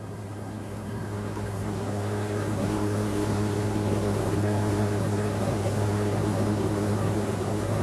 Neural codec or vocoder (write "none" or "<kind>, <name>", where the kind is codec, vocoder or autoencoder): codec, SNAC